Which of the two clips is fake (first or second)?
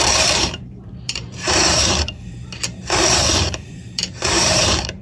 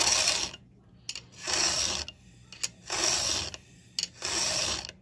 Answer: first